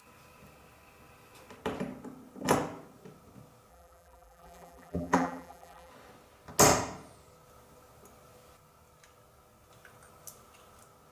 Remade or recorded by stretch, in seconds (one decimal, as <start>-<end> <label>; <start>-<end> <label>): 0.0-3.7 recorded; 3.7-5.9 remade; 5.9-11.1 recorded